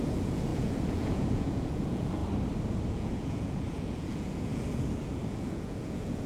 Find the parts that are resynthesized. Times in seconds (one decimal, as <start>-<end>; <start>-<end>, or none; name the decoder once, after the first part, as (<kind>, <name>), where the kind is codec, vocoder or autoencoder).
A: 0.0-2.2 (vocoder, Vocos); 2.9-6.3